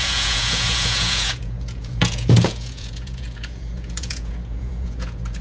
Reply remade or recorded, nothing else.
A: remade